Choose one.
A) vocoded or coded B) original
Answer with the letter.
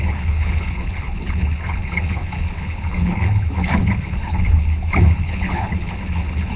A